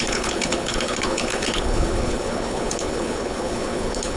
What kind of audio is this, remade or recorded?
remade